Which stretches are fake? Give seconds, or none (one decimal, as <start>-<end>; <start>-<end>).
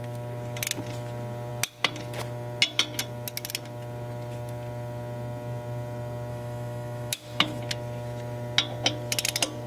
6.3-7.6